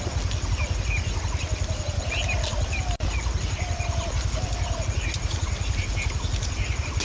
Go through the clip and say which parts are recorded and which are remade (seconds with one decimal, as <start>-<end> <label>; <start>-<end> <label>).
0.0-7.0 recorded